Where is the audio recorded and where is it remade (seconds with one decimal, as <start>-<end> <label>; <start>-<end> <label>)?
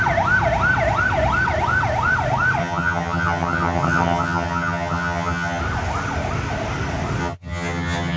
0.0-2.6 recorded; 2.6-5.6 remade; 5.6-7.2 recorded; 7.2-8.2 remade